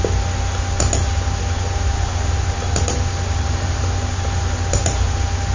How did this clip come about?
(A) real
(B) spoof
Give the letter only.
A